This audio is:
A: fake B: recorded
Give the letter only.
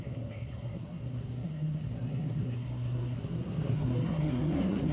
A